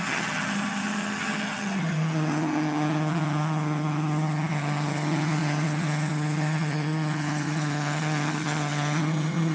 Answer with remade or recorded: remade